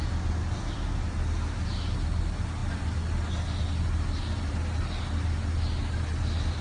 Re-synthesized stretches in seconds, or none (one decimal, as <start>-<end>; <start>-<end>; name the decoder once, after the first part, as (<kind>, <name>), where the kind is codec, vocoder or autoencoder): none